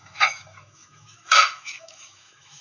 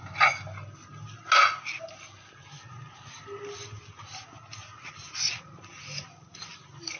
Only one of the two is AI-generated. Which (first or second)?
first